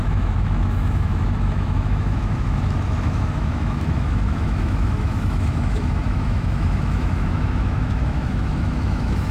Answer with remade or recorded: remade